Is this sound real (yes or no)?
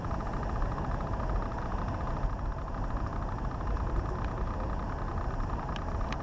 yes